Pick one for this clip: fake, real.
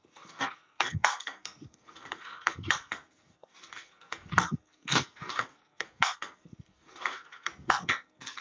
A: fake